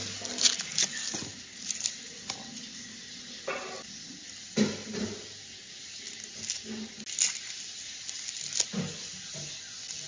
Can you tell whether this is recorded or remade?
recorded